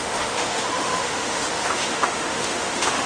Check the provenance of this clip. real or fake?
fake